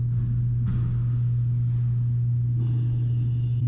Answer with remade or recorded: recorded